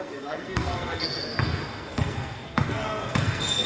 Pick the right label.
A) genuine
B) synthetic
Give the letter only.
B